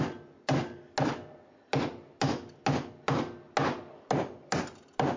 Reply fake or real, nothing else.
real